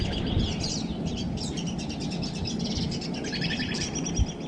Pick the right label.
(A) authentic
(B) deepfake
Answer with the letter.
B